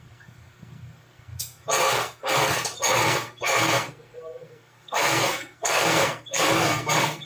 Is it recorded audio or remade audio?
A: remade